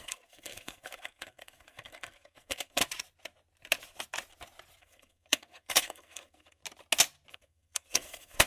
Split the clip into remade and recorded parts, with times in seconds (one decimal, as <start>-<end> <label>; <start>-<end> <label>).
0.0-2.8 remade; 2.8-4.8 recorded; 4.8-6.6 remade; 6.6-7.3 recorded; 7.3-8.5 remade